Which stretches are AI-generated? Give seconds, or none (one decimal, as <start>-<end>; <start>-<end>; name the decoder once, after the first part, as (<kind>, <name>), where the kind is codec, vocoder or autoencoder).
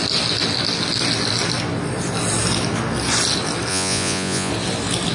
3.7-4.5 (vocoder, Vocos)